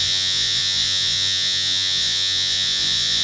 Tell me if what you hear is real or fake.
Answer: fake